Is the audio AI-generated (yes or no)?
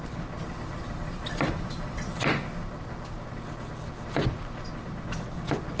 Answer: no